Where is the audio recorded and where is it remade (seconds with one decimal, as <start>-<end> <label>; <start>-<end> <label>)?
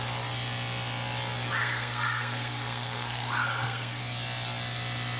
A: 0.0-1.6 recorded; 1.6-4.0 remade; 4.0-5.2 recorded